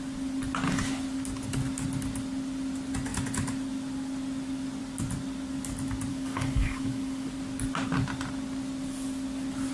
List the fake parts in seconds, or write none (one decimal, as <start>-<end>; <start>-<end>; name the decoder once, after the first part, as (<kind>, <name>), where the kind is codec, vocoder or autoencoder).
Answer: 6.1-7.3 (codec, DAC)